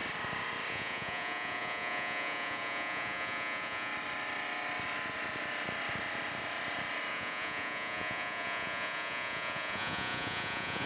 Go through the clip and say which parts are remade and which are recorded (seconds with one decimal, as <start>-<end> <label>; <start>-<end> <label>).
0.0-0.7 recorded; 0.7-3.9 remade; 3.9-7.1 recorded; 7.1-10.9 remade